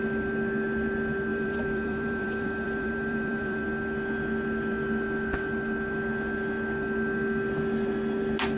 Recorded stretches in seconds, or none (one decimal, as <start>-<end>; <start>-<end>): 0.0-1.3; 3.6-8.6